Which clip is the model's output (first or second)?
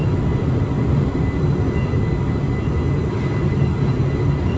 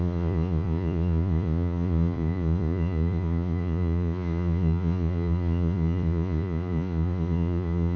second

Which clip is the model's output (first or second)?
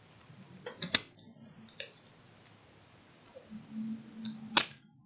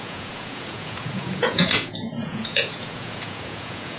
second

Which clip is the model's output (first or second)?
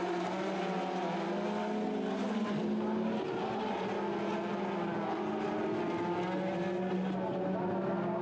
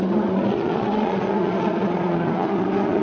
second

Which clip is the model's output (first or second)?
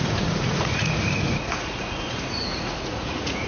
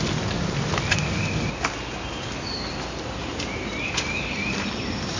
first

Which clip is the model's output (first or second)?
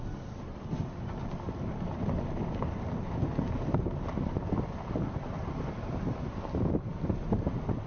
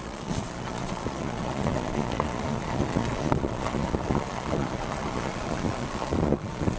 second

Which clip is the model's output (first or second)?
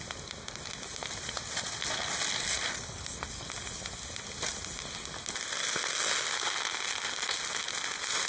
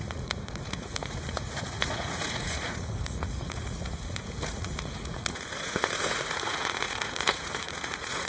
second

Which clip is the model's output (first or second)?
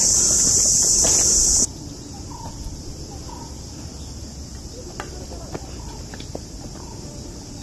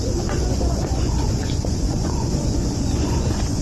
second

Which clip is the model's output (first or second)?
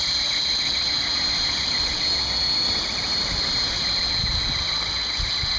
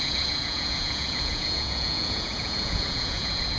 second